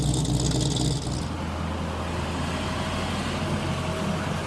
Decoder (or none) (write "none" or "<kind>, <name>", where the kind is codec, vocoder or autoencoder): none